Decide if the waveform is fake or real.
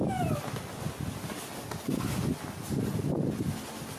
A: real